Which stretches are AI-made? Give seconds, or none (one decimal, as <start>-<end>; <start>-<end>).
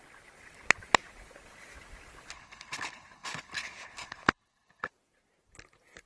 2.3-4.9